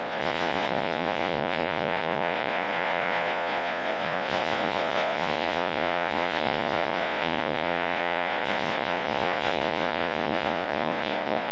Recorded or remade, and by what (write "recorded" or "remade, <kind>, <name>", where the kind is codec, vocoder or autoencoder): remade, vocoder, Vocos